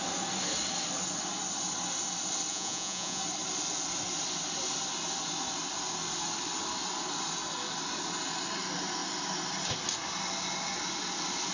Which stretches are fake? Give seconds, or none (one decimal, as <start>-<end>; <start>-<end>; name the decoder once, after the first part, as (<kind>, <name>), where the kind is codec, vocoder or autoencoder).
2.5-3.2 (vocoder, Vocos)